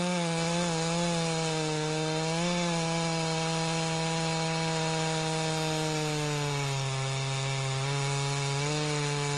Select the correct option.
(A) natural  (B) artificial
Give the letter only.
A